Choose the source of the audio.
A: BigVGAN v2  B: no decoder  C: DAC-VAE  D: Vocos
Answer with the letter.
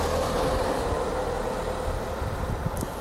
B